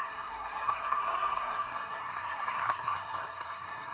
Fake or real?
fake